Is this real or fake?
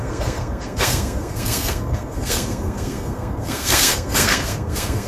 fake